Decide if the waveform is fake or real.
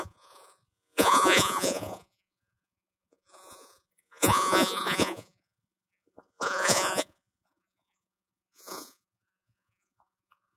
fake